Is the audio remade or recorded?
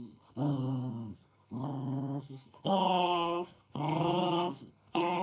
remade